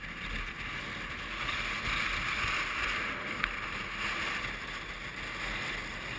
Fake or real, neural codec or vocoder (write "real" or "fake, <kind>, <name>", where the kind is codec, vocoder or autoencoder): real